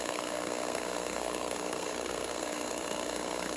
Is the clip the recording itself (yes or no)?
no